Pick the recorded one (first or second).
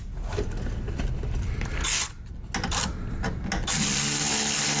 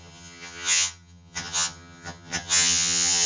first